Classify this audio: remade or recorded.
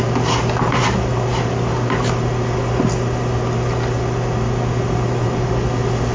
recorded